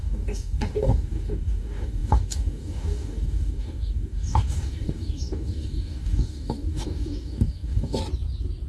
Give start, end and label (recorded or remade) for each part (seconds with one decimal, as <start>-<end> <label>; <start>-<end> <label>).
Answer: 0.0-8.0 remade; 8.0-8.7 recorded